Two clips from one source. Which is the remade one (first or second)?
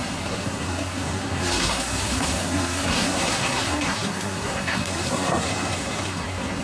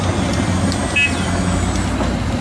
first